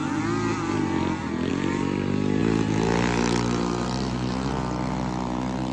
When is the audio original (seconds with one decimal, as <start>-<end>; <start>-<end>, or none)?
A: 0.0-5.7